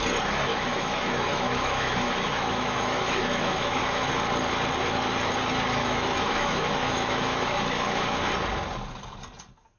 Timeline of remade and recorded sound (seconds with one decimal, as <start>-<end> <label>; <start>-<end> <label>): 0.0-0.5 recorded; 0.5-4.1 remade; 4.1-5.8 recorded; 5.8-8.2 remade; 8.2-9.8 recorded